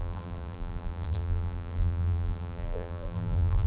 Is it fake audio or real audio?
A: fake